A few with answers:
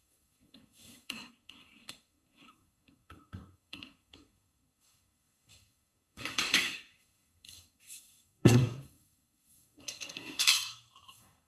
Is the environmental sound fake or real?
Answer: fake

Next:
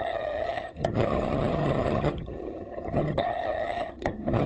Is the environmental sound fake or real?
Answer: fake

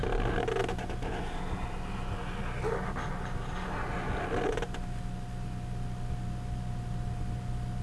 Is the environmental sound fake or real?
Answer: real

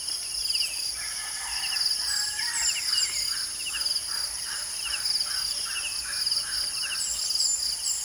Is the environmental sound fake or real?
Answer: real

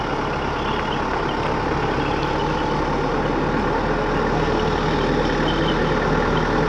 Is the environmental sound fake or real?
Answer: real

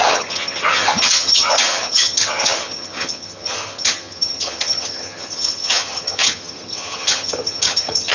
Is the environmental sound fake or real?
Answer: fake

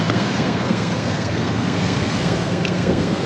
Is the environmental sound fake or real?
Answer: fake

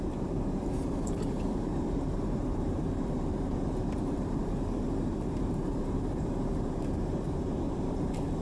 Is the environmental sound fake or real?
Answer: fake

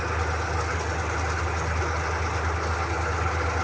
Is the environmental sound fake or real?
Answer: real